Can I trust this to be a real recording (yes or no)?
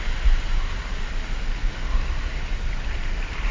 yes